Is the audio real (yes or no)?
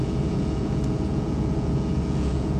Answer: no